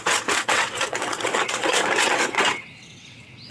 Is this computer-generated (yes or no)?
yes